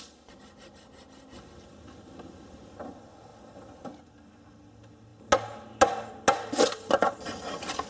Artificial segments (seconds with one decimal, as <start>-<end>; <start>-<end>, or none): none